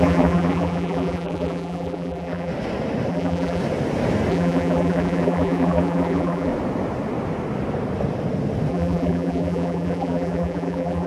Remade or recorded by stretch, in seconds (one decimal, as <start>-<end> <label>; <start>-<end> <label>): 0.0-2.5 remade; 2.5-3.1 recorded; 3.1-3.6 remade; 3.6-4.3 recorded; 4.3-6.5 remade; 6.5-8.7 recorded; 8.7-11.1 remade